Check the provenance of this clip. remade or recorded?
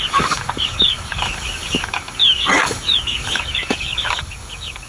remade